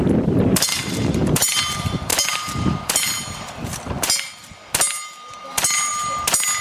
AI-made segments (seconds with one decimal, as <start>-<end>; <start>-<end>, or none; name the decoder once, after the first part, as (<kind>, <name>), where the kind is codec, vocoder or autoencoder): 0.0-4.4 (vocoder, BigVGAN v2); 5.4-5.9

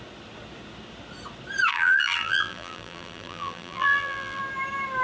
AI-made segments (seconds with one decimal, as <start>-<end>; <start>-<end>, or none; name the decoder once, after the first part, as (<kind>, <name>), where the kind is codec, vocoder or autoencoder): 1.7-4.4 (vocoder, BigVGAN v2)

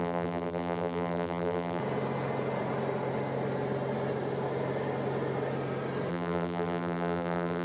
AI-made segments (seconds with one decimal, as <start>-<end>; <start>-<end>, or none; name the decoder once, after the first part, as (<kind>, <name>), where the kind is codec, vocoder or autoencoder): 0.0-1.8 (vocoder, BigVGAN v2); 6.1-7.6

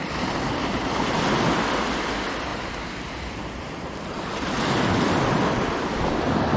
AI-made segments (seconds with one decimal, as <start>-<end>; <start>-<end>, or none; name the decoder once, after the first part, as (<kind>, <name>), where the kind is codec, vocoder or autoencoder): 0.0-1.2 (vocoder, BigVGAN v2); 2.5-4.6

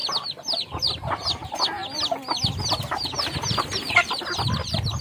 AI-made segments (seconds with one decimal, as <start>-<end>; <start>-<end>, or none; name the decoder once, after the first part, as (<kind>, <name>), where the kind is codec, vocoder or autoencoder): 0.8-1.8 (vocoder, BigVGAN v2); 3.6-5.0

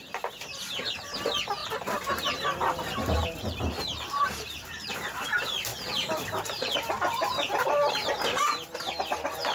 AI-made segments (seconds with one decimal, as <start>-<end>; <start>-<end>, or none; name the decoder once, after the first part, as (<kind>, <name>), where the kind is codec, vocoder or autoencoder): 1.6-4.8 (vocoder, BigVGAN v2); 5.7-8.1